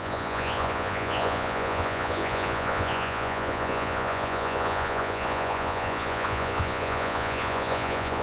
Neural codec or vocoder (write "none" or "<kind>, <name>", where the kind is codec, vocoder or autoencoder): vocoder, Vocos